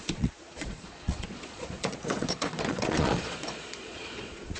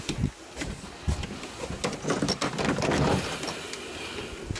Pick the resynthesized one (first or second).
first